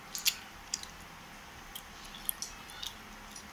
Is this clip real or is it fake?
real